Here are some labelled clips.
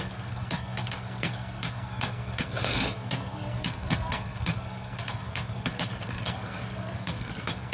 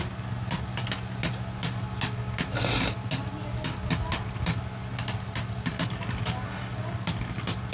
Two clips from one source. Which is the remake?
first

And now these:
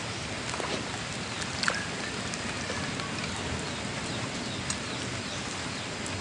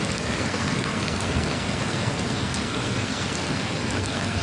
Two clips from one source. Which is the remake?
second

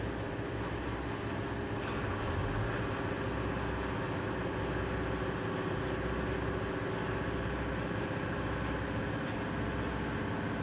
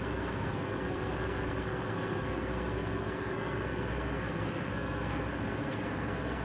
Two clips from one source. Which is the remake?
second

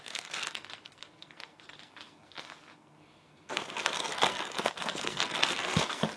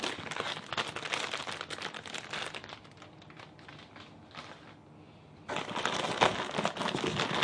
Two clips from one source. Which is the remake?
first